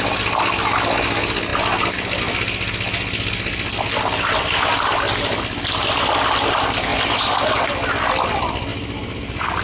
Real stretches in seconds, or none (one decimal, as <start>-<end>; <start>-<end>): 0.0-8.7